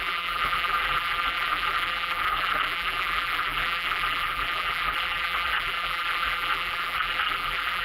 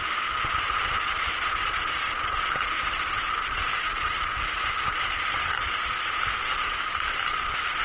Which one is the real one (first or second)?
second